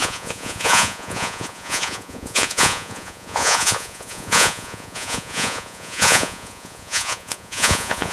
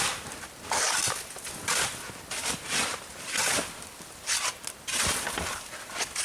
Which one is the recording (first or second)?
second